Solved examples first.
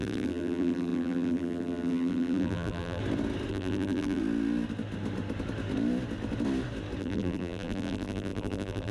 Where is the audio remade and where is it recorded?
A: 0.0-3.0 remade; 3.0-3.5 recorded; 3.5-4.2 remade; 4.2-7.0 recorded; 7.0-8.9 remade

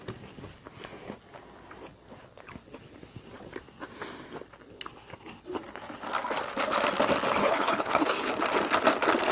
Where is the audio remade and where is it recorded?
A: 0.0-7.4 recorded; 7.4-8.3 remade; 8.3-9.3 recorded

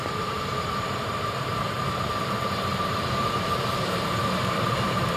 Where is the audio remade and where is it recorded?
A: 0.0-5.2 remade

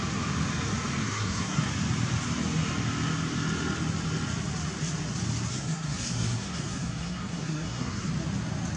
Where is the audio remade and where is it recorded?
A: 0.0-1.0 recorded; 1.0-1.6 remade; 1.6-5.5 recorded; 5.5-8.1 remade; 8.1-8.8 recorded

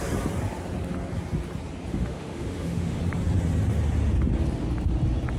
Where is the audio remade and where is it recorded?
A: 0.0-1.9 recorded; 1.9-3.0 remade; 3.0-5.4 recorded

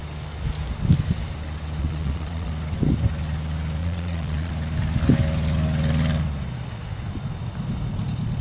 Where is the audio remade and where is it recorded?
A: 0.0-1.8 recorded; 1.8-2.5 remade; 2.5-3.8 recorded; 3.8-4.5 remade; 4.5-8.4 recorded